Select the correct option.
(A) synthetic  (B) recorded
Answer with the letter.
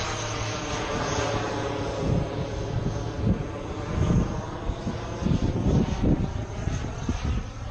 B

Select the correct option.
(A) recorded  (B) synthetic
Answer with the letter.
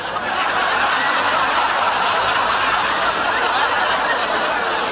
A